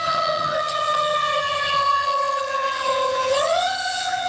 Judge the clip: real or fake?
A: fake